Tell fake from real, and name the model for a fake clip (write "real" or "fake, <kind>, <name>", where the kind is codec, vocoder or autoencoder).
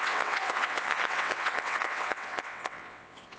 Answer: fake, vocoder, WaveNeXt